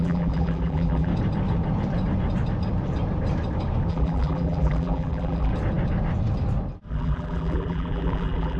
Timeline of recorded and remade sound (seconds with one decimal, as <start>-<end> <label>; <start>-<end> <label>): 0.0-1.1 remade; 1.1-3.9 recorded; 3.9-5.5 remade; 5.5-6.9 recorded; 6.9-8.6 remade

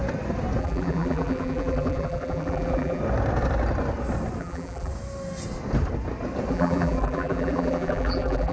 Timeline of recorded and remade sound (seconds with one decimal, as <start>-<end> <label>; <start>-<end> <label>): 0.0-0.6 recorded; 0.6-3.0 remade; 3.0-4.4 recorded; 4.4-4.9 remade; 4.9-6.5 recorded; 6.5-8.5 remade

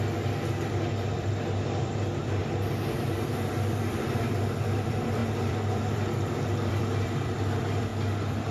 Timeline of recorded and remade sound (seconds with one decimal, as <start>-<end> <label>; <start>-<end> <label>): 0.0-7.9 remade; 7.9-8.5 recorded

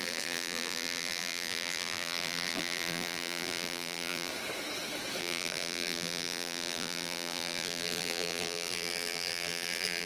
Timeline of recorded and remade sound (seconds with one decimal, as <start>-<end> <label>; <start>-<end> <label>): 0.0-4.3 remade; 4.3-5.2 recorded; 5.2-10.1 remade

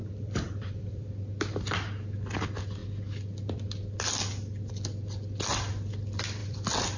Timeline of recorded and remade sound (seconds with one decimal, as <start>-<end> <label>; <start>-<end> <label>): 0.0-1.1 remade; 1.1-6.4 recorded; 6.4-7.0 remade

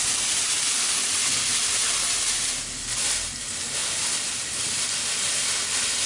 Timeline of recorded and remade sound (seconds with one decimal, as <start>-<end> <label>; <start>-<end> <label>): 0.0-6.1 recorded